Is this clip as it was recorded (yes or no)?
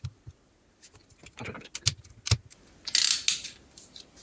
yes